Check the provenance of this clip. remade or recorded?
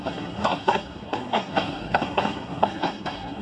remade